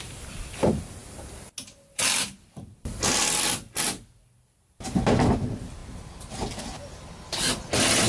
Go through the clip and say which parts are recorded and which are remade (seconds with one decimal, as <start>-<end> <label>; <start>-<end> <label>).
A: 0.0-8.1 recorded